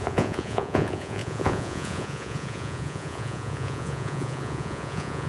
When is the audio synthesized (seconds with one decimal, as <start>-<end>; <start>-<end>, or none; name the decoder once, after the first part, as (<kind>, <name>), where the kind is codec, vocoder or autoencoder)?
0.0-5.3 (vocoder, Vocos)